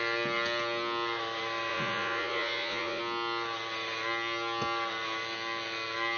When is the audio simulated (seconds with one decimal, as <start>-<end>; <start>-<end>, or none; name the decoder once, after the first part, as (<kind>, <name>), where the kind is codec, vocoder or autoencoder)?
1.7-3.0 (vocoder, Vocos)